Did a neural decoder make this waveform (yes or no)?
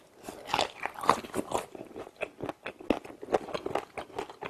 no